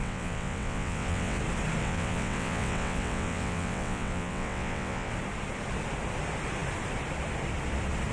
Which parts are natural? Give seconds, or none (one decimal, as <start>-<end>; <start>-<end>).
1.4-1.8; 5.1-8.1